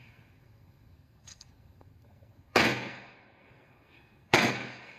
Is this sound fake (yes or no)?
yes